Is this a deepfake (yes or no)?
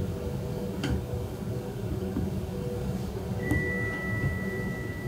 yes